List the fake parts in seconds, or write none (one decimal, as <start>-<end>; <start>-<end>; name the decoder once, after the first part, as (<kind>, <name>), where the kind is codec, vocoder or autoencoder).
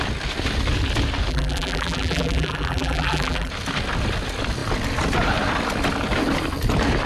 1.3-3.5 (vocoder, BigVGAN v2)